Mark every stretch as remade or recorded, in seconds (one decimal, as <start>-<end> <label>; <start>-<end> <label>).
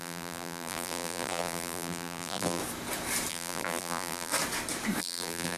0.0-2.6 remade; 2.6-3.3 recorded; 3.3-4.3 remade; 4.3-5.0 recorded; 5.0-5.6 remade